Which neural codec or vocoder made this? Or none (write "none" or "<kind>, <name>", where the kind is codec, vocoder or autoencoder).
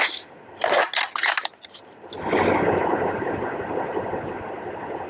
none